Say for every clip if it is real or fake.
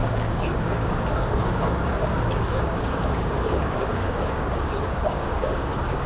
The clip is fake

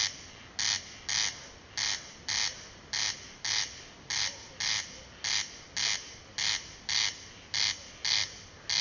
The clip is real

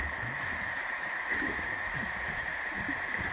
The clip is fake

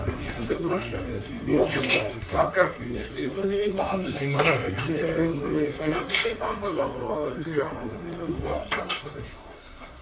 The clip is fake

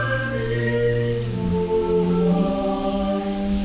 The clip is fake